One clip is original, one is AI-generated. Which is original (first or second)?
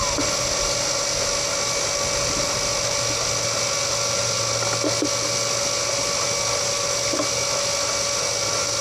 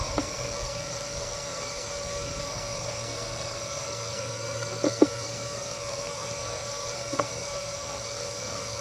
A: first